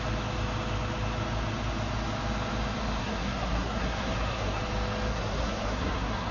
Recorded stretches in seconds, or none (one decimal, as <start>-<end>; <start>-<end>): 0.0-3.0; 4.6-5.1